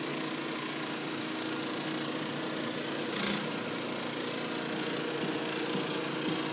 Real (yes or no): yes